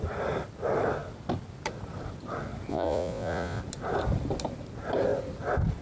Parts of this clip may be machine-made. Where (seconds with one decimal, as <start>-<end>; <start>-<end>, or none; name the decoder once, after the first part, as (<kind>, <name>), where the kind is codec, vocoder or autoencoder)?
2.7-3.6 (vocoder, Vocos)